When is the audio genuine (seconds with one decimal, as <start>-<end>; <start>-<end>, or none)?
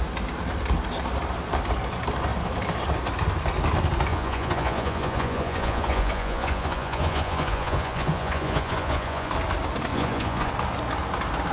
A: 0.0-4.1; 9.3-9.9; 10.5-11.5